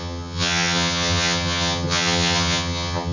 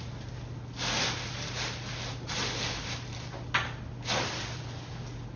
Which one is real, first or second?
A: second